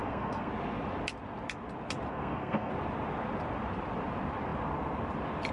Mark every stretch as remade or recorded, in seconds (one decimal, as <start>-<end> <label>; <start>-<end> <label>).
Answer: 0.0-0.5 remade; 0.5-2.1 recorded; 2.1-2.7 remade; 2.7-5.5 recorded